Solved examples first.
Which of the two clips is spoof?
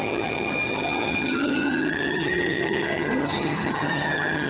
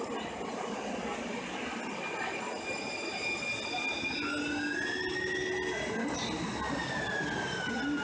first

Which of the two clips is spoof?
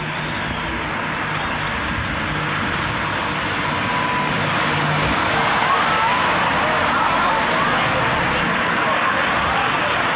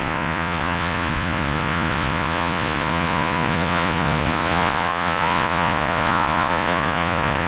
second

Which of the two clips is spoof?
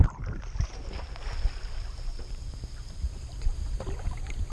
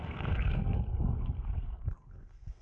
second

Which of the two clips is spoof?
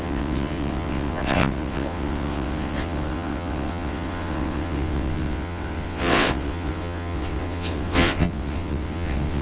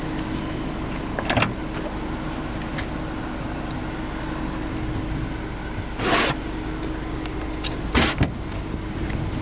first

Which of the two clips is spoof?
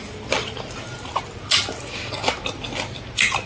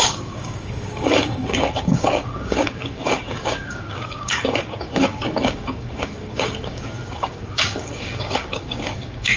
second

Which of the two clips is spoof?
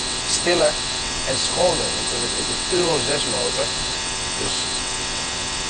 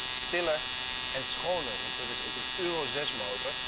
first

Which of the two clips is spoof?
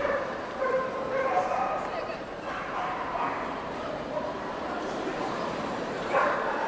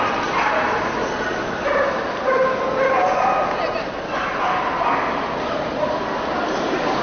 first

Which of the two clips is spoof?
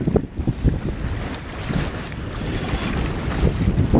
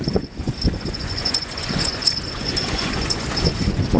second